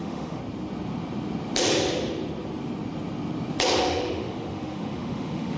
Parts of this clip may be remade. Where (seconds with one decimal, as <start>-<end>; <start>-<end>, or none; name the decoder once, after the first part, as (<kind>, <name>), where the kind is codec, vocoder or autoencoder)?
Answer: 0.0-0.4 (autoencoder, DAC-VAE); 3.8-5.6